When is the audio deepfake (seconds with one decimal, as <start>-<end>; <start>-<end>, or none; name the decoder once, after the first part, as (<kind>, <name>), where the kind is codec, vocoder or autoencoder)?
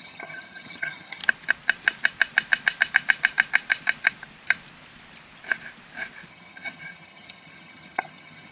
0.0-1.2 (vocoder, HiFi-GAN); 6.3-8.5